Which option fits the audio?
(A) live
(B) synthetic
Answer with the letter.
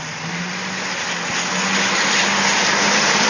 A